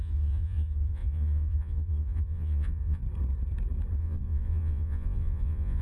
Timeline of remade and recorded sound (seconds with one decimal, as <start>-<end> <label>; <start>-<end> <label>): 0.0-3.0 remade; 3.0-4.0 recorded; 4.0-5.8 remade